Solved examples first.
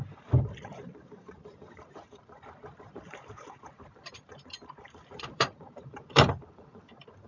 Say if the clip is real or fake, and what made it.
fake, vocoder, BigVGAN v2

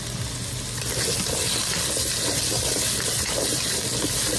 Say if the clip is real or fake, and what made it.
real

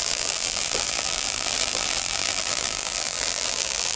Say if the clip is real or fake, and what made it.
fake, vocoder, BigVGAN v2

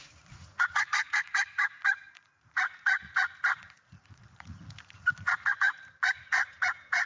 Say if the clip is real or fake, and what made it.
fake, vocoder, Vocos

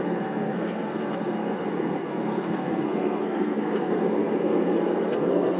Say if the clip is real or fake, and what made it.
fake, codec, SNAC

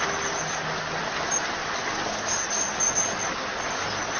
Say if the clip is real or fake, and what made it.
real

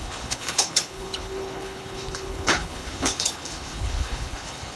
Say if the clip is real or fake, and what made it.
fake, codec, HILCodec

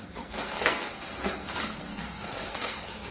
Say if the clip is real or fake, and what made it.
fake, codec, SNAC